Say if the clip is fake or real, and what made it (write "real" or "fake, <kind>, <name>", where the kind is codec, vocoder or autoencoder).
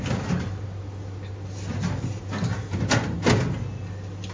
real